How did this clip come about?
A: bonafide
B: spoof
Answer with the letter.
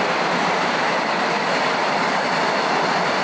B